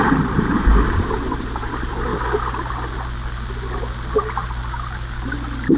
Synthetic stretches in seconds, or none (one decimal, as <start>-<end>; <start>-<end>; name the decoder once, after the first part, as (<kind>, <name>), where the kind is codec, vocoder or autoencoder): 0.0-2.1 (vocoder, BigVGAN v2)